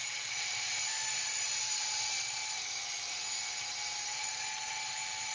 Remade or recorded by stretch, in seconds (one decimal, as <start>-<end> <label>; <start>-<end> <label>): 0.0-3.2 remade; 3.2-4.2 recorded; 4.2-4.7 remade; 4.7-5.3 recorded